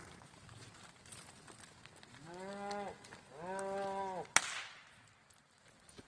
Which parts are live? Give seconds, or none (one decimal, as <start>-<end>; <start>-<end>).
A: 0.0-6.1